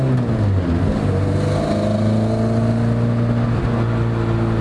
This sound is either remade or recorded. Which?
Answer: recorded